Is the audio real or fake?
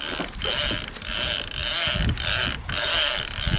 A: real